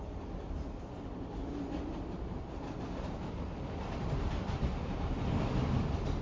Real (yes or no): yes